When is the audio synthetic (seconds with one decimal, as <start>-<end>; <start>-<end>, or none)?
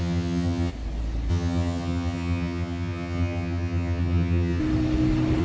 0.0-0.7; 1.3-4.6